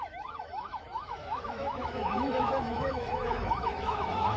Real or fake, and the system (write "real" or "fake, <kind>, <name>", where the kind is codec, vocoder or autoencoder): fake, autoencoder, DAC-VAE